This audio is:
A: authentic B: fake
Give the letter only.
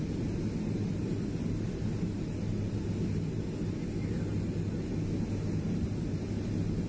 A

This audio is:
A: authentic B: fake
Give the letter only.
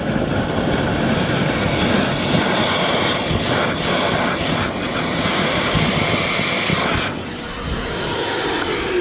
A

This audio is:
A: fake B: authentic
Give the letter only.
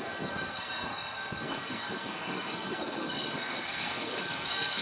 A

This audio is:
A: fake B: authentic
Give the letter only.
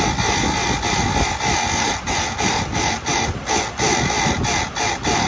B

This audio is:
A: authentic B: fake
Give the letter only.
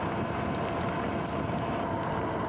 A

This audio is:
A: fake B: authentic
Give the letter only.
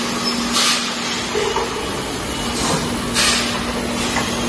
B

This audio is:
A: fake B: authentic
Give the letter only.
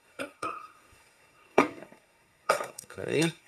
A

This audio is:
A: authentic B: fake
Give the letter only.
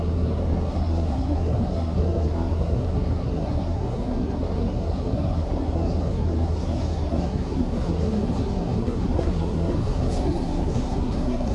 B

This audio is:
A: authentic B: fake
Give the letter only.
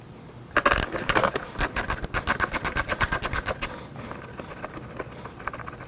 A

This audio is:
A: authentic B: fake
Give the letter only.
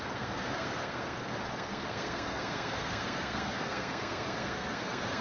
B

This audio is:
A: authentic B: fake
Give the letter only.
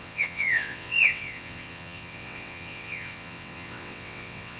B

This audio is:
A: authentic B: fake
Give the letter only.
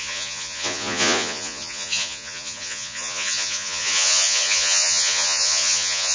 B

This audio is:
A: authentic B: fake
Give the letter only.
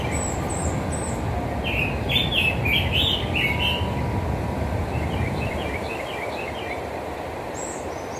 A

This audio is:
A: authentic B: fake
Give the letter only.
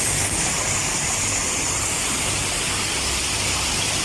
A